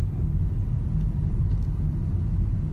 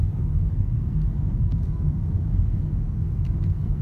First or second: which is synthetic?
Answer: second